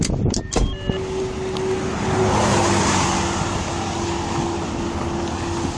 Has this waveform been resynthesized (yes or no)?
no